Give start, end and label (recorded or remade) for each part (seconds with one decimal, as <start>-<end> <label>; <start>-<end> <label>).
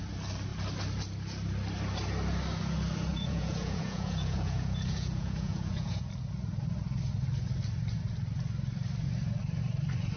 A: 0.0-3.1 recorded; 3.1-6.1 remade; 6.1-10.2 recorded